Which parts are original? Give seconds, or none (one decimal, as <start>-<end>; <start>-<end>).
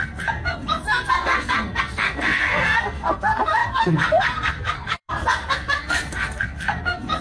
none